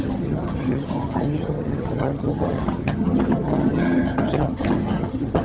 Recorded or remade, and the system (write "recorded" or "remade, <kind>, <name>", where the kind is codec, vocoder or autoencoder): remade, vocoder, HiFi-GAN